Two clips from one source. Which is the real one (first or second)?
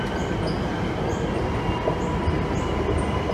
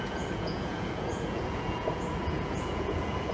first